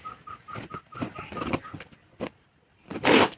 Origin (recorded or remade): recorded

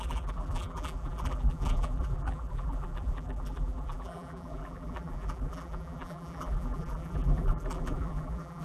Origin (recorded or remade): remade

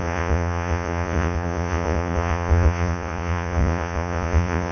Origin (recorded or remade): remade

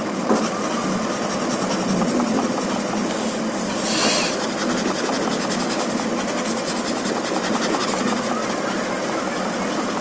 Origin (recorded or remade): recorded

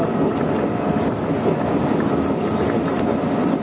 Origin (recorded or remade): recorded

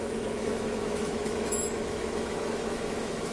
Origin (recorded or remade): remade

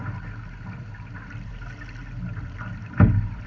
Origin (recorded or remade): recorded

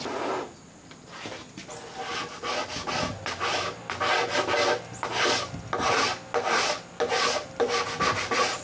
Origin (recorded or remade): recorded